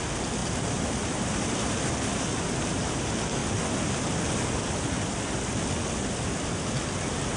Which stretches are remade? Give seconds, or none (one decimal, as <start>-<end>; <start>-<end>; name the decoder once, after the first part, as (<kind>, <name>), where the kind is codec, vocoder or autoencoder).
0.4-2.9 (vocoder, BigVGAN v2); 3.4-6.4

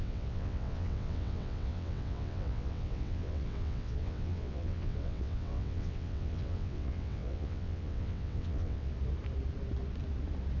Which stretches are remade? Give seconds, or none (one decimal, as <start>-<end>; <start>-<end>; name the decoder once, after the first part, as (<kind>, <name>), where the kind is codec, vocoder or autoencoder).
0.0-8.9 (vocoder, WaveNeXt)

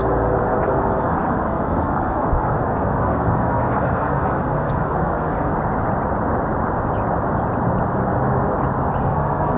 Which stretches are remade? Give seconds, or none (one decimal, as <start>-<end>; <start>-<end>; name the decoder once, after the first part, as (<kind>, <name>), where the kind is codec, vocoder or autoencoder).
0.0-5.5 (codec, SNAC); 9.0-9.6